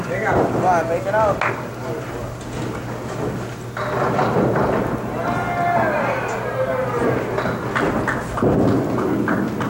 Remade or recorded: recorded